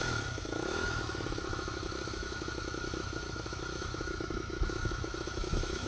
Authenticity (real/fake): fake